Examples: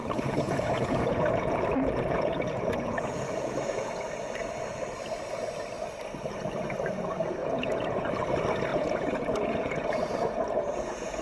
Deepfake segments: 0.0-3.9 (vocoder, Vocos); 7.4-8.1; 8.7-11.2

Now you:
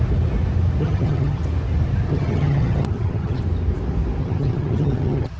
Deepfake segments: 0.8-1.4 (vocoder, HiFi-GAN); 2.1-3.4; 4.2-5.4

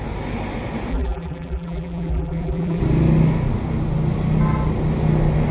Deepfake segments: 0.9-2.8 (vocoder, BigVGAN v2)

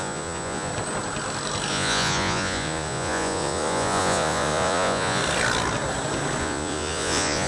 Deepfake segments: 0.0-0.7 (vocoder, Vocos); 1.7-5.2; 6.4-7.5

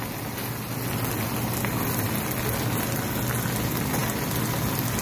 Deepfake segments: none

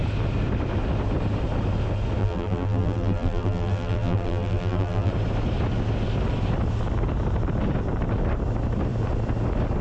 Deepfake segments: 2.2-5.1 (vocoder, BigVGAN v2)

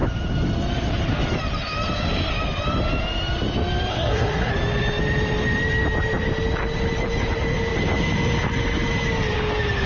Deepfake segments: 3.9-4.5 (codec, SNAC)

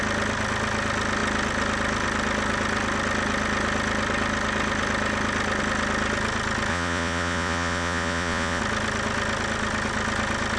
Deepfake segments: 6.7-8.6 (vocoder, Vocos)